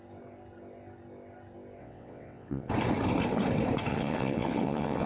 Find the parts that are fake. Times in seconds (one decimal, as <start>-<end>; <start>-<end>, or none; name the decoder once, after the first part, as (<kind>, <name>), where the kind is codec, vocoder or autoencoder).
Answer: 1.8-2.7 (vocoder, WaveNeXt); 3.9-5.1